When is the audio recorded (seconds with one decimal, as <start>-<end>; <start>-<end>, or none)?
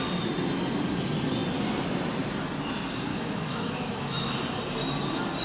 0.0-3.1; 4.3-5.4